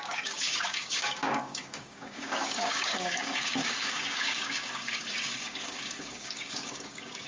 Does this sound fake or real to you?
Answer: fake